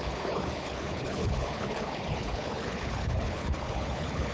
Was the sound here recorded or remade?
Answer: remade